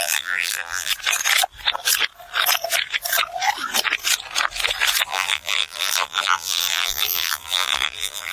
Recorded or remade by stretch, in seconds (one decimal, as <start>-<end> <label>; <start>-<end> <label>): 0.0-0.9 remade; 0.9-5.1 recorded; 5.1-8.3 remade